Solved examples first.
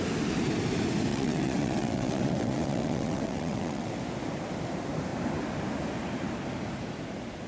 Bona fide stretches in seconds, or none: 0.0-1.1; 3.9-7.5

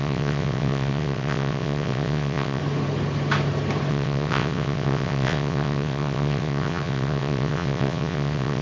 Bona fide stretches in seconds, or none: 2.6-3.9

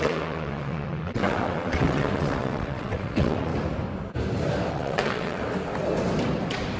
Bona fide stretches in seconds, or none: 3.5-4.7; 5.4-6.8

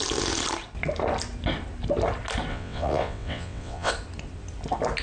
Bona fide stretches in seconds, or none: 0.0-2.5; 3.9-5.0

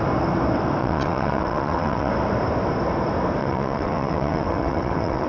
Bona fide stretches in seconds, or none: 0.0-0.8; 2.1-3.4

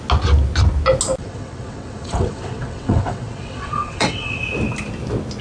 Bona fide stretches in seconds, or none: 0.0-1.2; 4.4-5.4

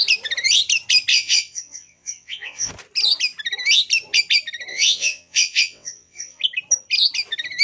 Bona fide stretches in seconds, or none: 0.0-1.1; 2.7-4.7; 6.4-7.6

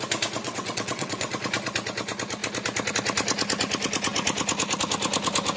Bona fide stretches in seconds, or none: 0.0-0.4; 1.3-5.6